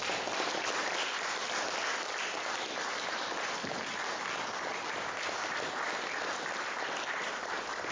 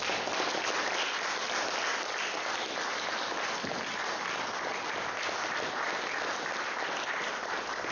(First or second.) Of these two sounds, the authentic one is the second